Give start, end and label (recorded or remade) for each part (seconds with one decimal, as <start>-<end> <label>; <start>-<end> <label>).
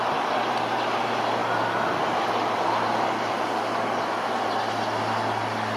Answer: 0.0-5.8 recorded